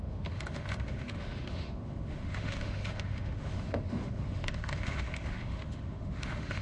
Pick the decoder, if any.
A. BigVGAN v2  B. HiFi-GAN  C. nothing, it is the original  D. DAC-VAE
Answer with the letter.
D